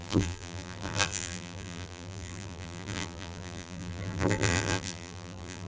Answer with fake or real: fake